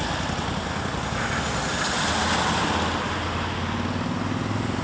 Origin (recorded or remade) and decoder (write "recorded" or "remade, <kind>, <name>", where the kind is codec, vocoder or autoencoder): recorded